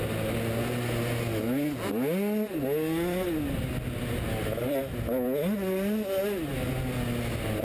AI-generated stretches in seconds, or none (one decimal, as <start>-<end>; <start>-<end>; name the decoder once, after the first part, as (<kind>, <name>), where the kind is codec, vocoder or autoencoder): none